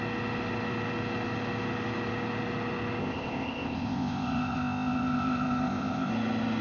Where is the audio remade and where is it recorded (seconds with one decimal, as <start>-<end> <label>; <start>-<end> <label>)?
0.0-3.0 recorded; 3.0-6.1 remade; 6.1-6.6 recorded